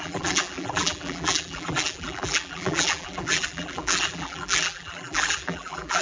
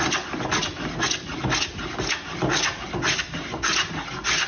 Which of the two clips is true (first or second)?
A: second